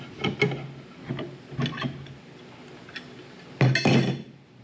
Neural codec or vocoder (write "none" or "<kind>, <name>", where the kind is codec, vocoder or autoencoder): none